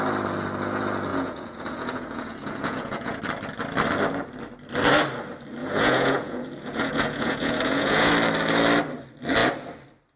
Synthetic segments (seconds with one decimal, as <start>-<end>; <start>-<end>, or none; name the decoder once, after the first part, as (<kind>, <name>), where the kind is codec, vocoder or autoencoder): 1.1-3.2 (vocoder, Vocos); 5.6-8.1